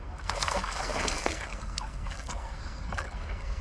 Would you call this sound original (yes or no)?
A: no